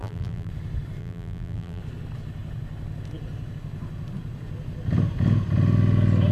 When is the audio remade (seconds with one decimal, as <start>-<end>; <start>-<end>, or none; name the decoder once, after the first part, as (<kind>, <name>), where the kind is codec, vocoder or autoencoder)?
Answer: 0.0-0.5 (vocoder, BigVGAN v2); 1.0-1.8